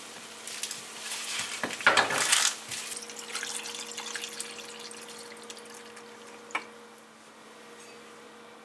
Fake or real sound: real